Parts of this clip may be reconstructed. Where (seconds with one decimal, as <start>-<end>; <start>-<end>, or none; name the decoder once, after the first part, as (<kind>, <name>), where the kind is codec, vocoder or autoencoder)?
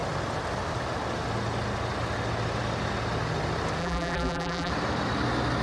3.8-4.7 (vocoder, BigVGAN v2)